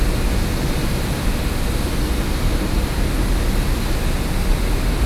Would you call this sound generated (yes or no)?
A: no